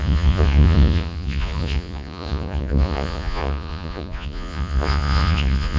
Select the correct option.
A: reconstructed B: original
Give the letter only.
A